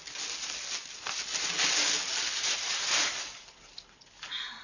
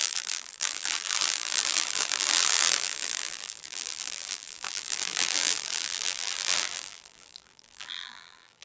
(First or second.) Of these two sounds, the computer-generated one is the second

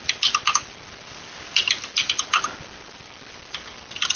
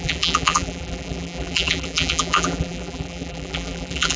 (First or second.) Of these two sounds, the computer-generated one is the second